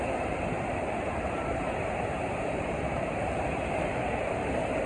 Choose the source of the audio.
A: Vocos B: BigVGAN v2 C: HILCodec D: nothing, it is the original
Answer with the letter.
B